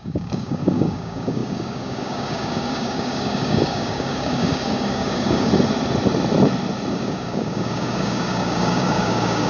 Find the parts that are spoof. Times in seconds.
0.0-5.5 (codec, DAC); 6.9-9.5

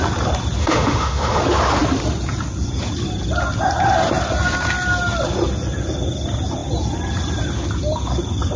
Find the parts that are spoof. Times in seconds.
0.6-1.4 (autoencoder, DAC-VAE)

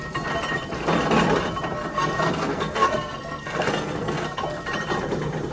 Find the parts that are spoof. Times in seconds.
1.9-4.4 (codec, SNAC)

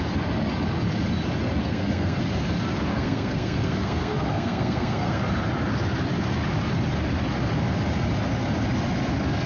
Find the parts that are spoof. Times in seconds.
1.6-2.2 (codec, SNAC); 2.9-5.2

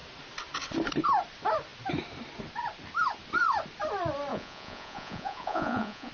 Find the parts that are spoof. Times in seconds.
4.3-6.1 (vocoder, Vocos)

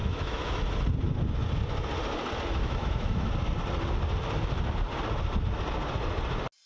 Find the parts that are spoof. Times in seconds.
0.0-0.6 (autoencoder, DAC-VAE); 2.6-3.3

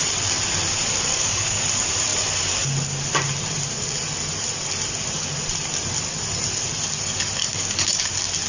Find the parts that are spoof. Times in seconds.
1.1-1.6 (codec, DAC); 7.4-8.1